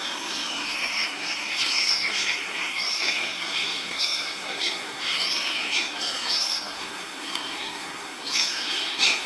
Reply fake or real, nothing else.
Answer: fake